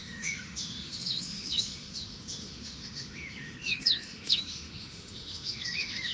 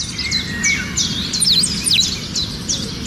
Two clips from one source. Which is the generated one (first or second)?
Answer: first